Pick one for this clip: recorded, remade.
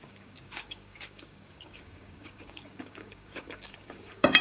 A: remade